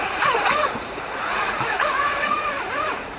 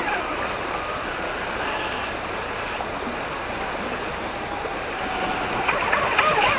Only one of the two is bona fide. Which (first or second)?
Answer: second